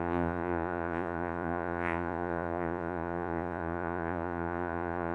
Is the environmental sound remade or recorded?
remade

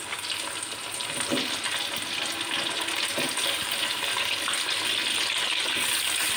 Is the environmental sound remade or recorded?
recorded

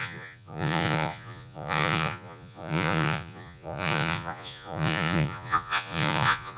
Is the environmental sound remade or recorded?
remade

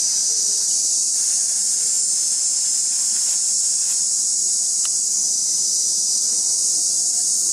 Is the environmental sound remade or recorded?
recorded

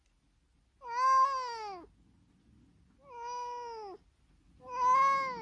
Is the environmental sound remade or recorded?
recorded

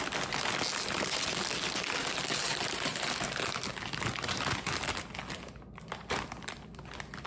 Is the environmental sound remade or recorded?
recorded